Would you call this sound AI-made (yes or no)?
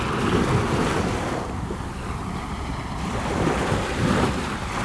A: no